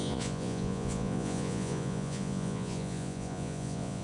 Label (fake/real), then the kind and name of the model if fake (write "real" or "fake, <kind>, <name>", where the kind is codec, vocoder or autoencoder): fake, vocoder, Vocos